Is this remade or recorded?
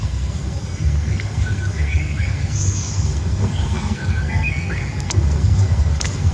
remade